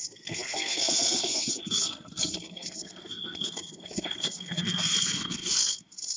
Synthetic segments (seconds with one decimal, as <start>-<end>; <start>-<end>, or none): 0.0-6.2